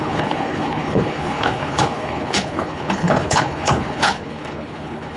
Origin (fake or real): fake